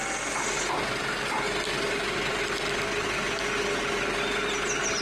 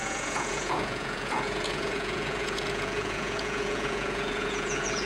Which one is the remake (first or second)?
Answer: second